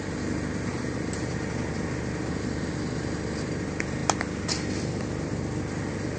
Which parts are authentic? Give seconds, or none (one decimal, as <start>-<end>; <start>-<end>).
0.0-6.2